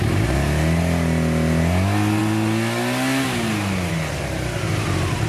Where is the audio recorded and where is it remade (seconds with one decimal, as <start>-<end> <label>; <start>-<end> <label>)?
0.0-5.3 recorded